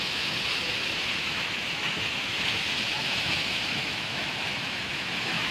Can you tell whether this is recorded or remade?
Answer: remade